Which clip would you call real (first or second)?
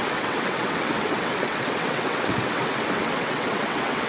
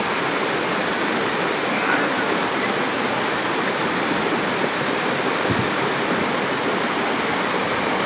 second